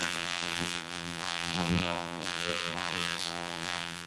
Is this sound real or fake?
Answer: fake